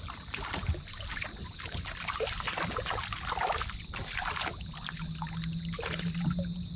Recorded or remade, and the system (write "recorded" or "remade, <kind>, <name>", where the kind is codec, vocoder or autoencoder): recorded